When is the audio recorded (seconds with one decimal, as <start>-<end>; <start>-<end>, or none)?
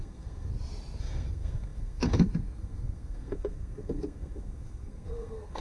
0.5-1.0